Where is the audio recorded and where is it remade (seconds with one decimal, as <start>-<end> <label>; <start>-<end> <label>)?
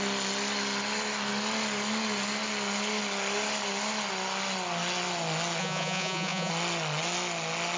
0.0-5.6 recorded; 5.6-6.5 remade; 6.5-7.8 recorded